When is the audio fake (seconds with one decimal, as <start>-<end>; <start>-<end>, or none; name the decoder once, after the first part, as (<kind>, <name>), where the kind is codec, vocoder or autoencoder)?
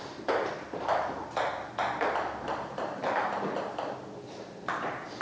0.0-5.2 (vocoder, BigVGAN v2)